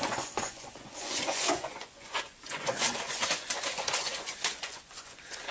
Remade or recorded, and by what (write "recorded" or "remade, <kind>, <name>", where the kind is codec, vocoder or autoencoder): remade, vocoder, Vocos